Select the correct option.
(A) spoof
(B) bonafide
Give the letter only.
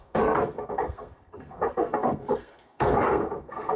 A